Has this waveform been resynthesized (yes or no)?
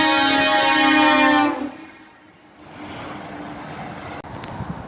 no